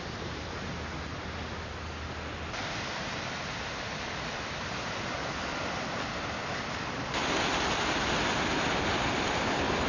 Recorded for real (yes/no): yes